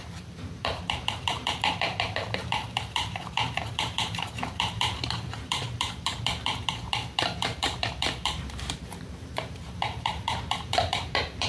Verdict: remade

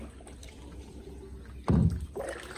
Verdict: recorded